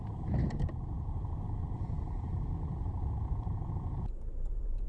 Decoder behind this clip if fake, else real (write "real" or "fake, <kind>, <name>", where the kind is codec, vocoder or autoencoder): fake, vocoder, BigVGAN v2